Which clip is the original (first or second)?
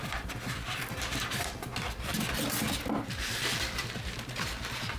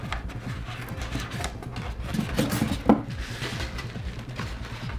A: second